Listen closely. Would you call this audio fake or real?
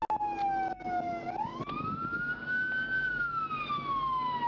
real